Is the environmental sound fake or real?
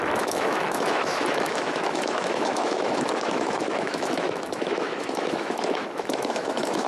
fake